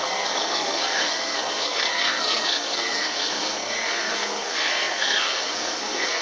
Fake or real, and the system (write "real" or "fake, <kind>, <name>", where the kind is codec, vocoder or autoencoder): fake, codec, SNAC